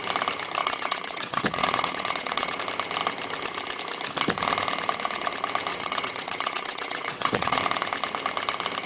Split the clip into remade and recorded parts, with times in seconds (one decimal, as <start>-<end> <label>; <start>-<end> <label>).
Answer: 0.0-0.6 recorded; 0.6-2.6 remade; 2.6-5.7 recorded; 5.7-7.6 remade; 7.6-8.9 recorded

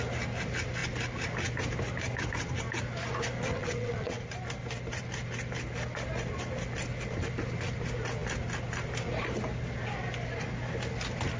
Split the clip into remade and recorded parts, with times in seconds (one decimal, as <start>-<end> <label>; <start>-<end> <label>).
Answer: 0.0-3.5 recorded; 3.5-4.2 remade; 4.2-11.4 recorded